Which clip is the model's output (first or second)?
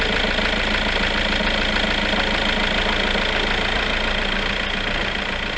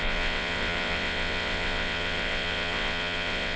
second